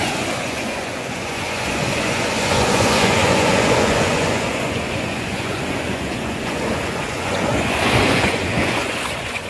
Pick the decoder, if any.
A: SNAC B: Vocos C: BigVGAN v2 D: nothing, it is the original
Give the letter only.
B